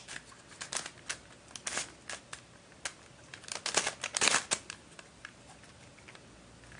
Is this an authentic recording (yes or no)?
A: yes